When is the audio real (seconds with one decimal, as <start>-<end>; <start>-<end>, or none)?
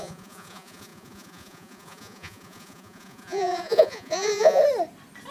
4.6-5.3